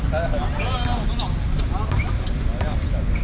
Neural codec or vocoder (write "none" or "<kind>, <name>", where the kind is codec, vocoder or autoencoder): none